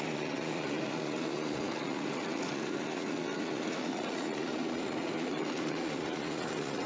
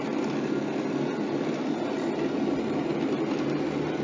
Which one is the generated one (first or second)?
first